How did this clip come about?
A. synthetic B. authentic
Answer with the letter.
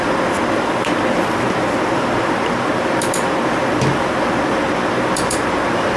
A